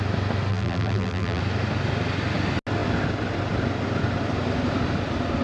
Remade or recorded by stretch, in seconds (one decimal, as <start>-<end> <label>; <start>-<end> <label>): 0.0-0.5 recorded; 0.5-1.4 remade; 1.4-5.4 recorded